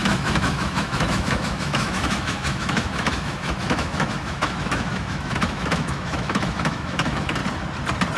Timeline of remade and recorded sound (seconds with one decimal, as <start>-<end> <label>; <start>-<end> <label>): 0.0-7.4 remade; 7.4-8.2 recorded